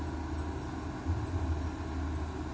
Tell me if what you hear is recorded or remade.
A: recorded